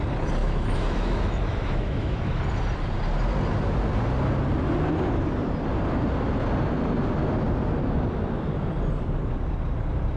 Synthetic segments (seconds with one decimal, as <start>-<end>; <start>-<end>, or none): 0.4-2.4